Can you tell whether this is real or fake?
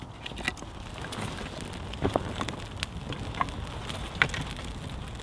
real